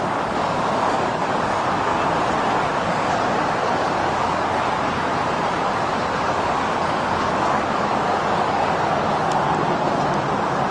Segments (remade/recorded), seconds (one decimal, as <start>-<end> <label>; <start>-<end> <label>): 0.0-1.9 remade; 1.9-2.6 recorded; 2.6-5.1 remade; 5.1-6.2 recorded; 6.2-9.1 remade; 9.1-10.7 recorded